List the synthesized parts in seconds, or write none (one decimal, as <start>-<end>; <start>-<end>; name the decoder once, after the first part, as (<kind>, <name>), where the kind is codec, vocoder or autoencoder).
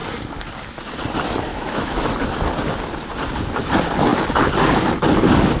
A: 1.5-2.1 (autoencoder, DAC-VAE)